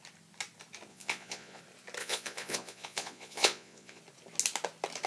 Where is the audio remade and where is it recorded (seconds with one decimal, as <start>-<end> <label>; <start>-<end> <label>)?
0.0-0.9 recorded; 0.9-1.6 remade; 1.6-2.0 recorded; 2.0-4.0 remade; 4.0-5.1 recorded